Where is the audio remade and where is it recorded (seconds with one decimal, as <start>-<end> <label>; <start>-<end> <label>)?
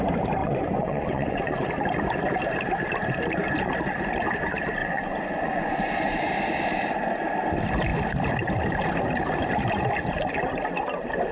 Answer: 0.0-0.4 recorded; 0.4-1.7 remade; 1.7-4.8 recorded; 4.8-5.8 remade; 5.8-11.3 recorded